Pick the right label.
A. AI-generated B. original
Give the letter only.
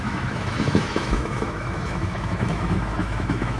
A